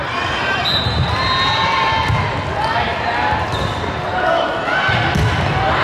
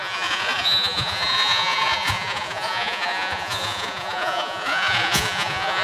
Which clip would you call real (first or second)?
first